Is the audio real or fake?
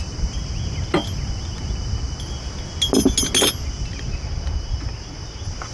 real